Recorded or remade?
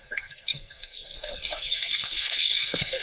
remade